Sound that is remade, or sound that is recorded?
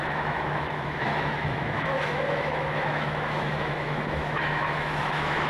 remade